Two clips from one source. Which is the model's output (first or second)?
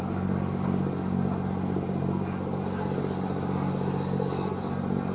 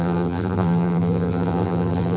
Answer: second